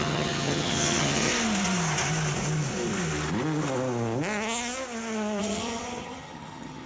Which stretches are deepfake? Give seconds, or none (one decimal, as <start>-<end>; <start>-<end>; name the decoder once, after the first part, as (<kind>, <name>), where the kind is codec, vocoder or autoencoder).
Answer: 0.0-1.3 (vocoder, HiFi-GAN); 5.4-6.9